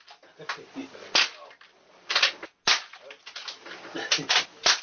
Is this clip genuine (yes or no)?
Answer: yes